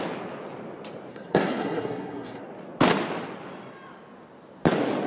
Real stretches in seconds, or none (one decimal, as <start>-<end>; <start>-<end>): 0.0-1.1; 2.4-5.1

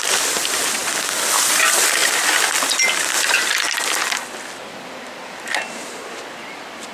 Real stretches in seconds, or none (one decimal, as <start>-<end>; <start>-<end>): 0.0-6.9